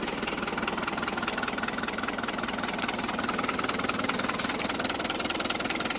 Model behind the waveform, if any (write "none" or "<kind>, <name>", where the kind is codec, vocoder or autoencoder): vocoder, BigVGAN v2